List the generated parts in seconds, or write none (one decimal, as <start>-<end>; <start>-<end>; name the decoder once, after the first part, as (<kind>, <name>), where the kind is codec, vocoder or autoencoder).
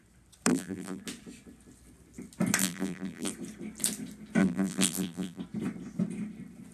0.5-1.0 (vocoder, BigVGAN v2); 2.6-3.3; 4.4-5.4